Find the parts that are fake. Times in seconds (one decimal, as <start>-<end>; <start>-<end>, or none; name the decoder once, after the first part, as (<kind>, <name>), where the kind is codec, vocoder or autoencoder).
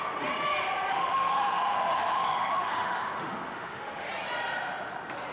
0.9-4.1 (autoencoder, DAC-VAE)